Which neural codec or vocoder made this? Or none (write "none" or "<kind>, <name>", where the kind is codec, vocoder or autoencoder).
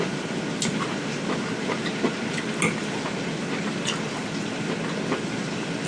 none